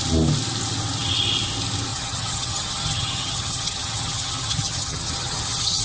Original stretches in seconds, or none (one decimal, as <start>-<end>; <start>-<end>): 0.0-1.9